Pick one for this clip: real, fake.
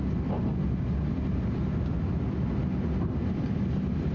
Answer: real